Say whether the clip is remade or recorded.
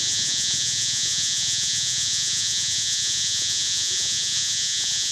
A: remade